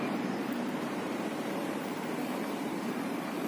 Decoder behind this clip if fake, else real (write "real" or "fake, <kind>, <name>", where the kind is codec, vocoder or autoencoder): fake, vocoder, BigVGAN v2